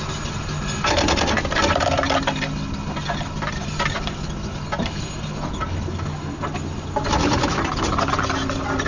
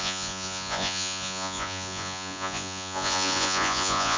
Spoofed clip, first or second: second